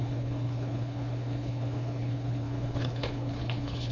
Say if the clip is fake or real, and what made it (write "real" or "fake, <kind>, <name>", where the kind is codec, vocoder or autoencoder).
fake, codec, HILCodec